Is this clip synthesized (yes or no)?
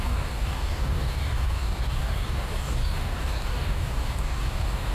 yes